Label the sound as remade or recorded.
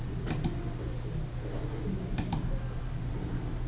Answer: recorded